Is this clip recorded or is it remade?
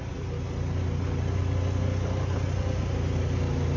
recorded